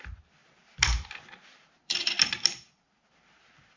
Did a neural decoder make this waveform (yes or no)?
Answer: yes